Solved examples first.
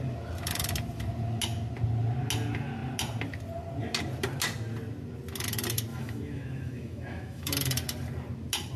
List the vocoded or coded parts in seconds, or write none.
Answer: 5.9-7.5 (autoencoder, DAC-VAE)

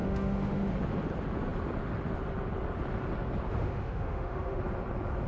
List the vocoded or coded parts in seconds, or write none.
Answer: 0.0-0.7 (autoencoder, DAC-VAE); 3.6-4.6

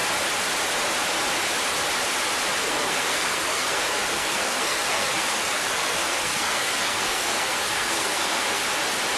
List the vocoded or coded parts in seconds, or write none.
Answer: 2.6-8.6 (codec, SNAC)